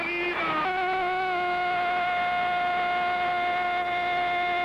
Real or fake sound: real